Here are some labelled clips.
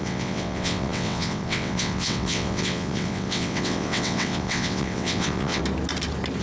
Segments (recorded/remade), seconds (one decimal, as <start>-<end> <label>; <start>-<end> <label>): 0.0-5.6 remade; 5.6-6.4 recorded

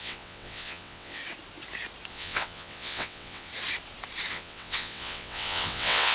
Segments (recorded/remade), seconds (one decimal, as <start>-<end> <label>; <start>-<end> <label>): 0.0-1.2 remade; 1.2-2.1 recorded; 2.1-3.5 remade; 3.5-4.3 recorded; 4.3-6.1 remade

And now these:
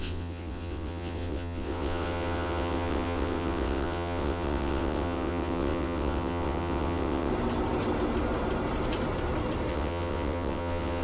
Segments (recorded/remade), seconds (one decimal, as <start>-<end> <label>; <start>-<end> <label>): 0.0-7.3 remade; 7.3-9.7 recorded; 9.7-11.0 remade

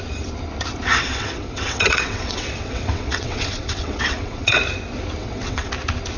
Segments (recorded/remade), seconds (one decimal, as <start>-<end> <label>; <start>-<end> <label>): 0.0-0.9 recorded; 0.9-4.6 remade; 4.6-5.2 recorded; 5.2-5.7 remade; 5.7-6.2 recorded

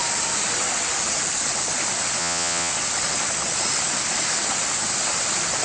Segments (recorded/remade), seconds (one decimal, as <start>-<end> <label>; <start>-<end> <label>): 0.0-2.2 recorded; 2.2-2.7 remade; 2.7-5.6 recorded